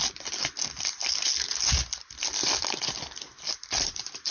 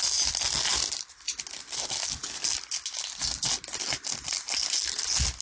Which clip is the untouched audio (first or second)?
second